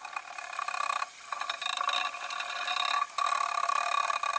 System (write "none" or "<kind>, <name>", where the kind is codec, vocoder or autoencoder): none